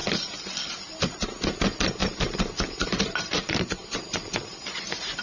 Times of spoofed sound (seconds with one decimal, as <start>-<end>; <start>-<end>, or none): 2.0-5.2